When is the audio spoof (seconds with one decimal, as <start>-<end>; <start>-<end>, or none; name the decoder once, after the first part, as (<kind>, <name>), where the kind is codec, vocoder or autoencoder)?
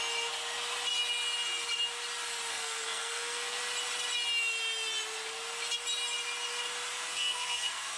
2.5-3.6 (codec, SNAC); 7.1-8.0